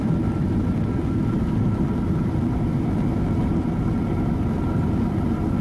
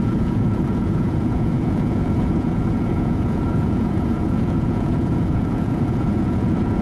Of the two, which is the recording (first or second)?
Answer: first